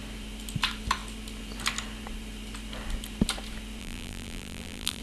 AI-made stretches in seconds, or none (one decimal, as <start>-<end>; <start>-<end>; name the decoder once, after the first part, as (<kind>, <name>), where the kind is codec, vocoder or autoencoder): 3.8-5.0 (vocoder, BigVGAN v2)